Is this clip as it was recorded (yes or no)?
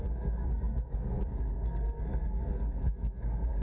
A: no